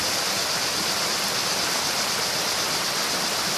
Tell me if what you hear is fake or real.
real